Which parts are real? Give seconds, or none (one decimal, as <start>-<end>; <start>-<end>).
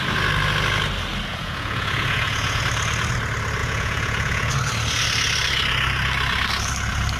0.0-1.3; 2.6-3.6; 4.5-7.2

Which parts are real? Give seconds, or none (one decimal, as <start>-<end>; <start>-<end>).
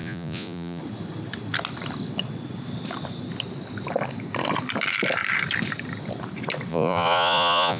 0.8-6.7